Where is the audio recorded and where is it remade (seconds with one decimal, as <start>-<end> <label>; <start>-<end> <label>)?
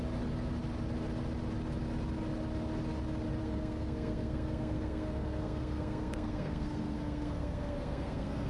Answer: 0.0-3.4 recorded; 3.4-8.5 remade